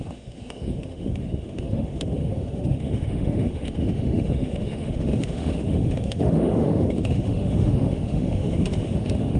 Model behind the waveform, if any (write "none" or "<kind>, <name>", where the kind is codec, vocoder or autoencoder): autoencoder, DAC-VAE